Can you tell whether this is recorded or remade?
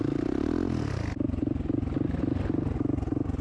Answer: recorded